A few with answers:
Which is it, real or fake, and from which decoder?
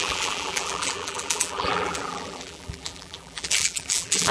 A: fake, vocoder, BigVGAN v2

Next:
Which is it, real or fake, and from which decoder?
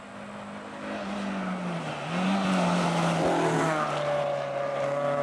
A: real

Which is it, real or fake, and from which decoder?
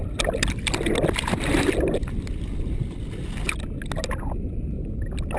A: real